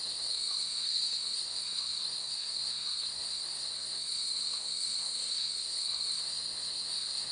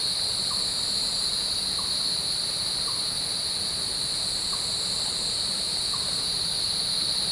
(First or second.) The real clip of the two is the second